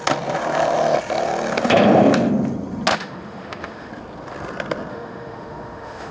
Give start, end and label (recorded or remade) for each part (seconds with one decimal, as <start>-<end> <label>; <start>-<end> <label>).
0.0-2.9 recorded; 2.9-3.9 remade; 3.9-4.9 recorded; 4.9-6.1 remade